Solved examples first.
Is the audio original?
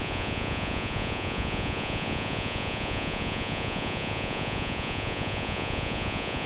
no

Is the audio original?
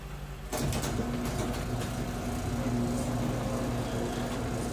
yes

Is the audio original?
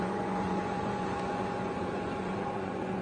no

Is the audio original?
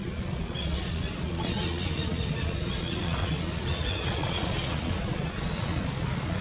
no